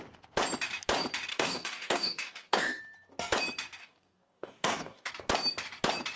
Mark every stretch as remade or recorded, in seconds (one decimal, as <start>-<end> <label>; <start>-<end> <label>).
0.0-1.3 recorded; 1.3-2.8 remade; 2.8-3.8 recorded; 3.8-5.1 remade; 5.1-6.2 recorded